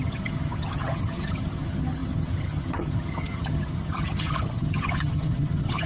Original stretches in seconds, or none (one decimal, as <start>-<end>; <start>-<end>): none